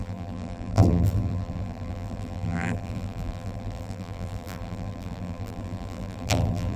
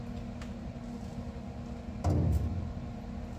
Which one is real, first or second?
second